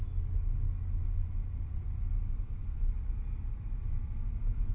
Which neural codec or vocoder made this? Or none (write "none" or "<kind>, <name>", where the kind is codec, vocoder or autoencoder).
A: none